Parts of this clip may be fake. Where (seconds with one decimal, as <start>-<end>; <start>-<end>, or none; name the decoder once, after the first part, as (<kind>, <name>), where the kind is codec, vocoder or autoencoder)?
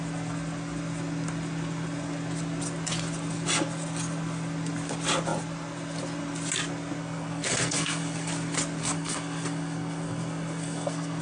7.0-8.3 (codec, SNAC); 8.8-11.2